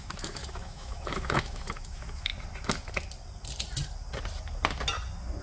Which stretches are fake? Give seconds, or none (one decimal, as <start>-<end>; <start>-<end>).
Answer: 0.0-2.3

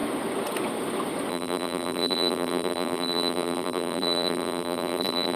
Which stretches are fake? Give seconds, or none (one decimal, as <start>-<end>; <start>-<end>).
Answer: 1.3-5.4

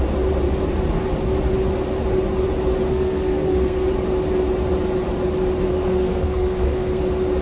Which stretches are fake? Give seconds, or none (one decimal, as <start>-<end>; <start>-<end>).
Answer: 2.9-3.9; 5.7-7.0

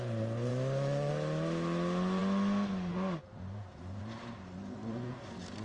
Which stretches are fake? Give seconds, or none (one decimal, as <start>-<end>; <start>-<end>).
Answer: 0.5-1.1

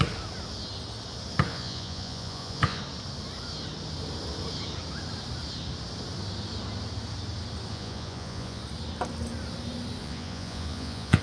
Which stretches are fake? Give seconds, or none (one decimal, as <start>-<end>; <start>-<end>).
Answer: 1.5-2.8; 7.7-8.6; 10.0-11.2

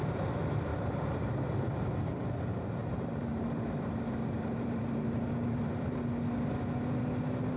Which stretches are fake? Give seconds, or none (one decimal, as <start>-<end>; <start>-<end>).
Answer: 0.7-1.9; 2.8-6.0